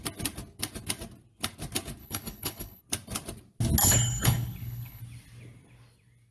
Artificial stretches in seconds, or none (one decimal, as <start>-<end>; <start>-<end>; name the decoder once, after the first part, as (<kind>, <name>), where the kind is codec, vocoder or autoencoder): 2.0-2.8 (codec, HILCodec); 3.8-5.0